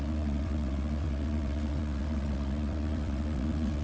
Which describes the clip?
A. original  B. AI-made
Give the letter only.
B